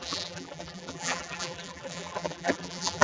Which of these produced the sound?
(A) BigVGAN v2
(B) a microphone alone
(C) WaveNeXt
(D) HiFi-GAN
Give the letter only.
A